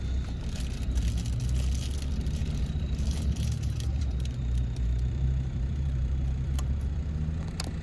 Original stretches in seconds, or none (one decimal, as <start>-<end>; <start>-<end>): 0.0-2.4; 7.1-7.8